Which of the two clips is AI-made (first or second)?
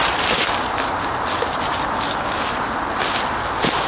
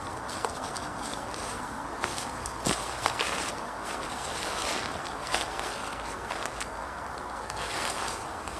second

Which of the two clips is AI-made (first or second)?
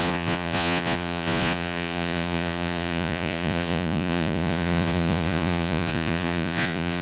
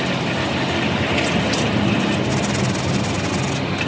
first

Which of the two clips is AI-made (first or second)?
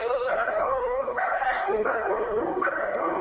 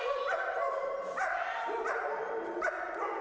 first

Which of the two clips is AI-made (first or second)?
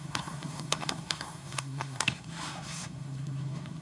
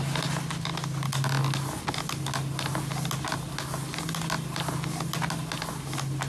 first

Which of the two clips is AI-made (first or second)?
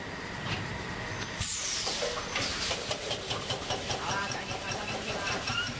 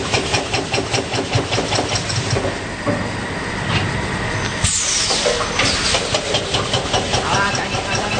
first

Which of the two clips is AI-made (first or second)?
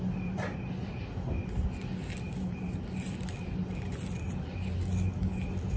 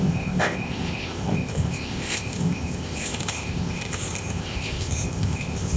second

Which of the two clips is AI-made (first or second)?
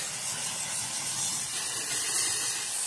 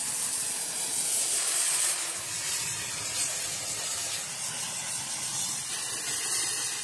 second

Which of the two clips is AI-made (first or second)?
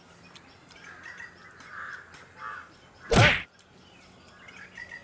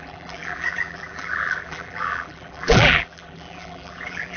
second